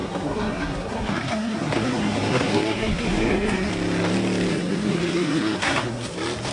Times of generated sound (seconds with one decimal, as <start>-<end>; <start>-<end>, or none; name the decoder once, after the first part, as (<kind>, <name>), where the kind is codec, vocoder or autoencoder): 0.0-3.7 (codec, SNAC); 4.5-6.1